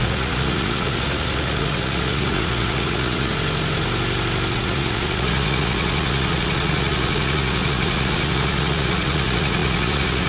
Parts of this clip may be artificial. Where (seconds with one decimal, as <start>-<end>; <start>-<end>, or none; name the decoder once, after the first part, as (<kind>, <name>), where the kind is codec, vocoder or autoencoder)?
0.0-3.3 (vocoder, Vocos); 4.5-10.3